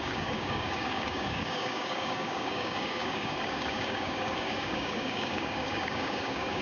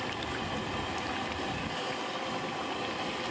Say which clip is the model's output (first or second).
first